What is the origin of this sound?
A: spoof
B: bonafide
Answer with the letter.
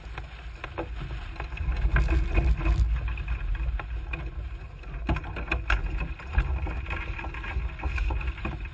B